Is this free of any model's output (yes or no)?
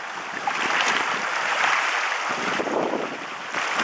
yes